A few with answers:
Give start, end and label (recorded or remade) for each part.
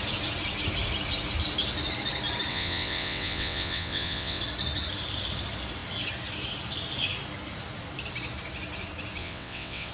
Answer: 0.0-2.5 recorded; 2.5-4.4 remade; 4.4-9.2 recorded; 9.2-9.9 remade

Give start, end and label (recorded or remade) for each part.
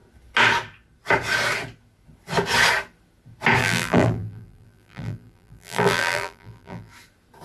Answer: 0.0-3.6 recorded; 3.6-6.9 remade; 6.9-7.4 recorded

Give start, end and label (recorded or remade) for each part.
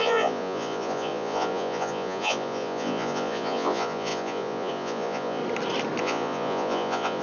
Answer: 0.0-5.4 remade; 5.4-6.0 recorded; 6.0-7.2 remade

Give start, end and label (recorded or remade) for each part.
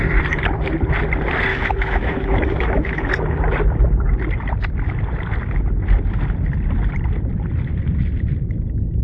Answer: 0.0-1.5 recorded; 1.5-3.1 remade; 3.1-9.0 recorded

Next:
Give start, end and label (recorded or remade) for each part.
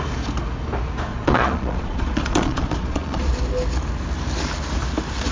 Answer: 0.0-1.1 recorded; 1.1-3.3 remade; 3.3-5.3 recorded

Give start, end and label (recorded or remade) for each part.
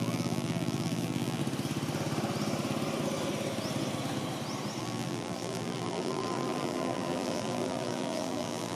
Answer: 0.0-1.4 remade; 1.4-4.8 recorded; 4.8-8.8 remade